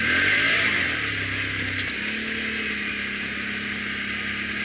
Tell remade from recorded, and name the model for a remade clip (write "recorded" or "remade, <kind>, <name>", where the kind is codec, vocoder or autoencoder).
recorded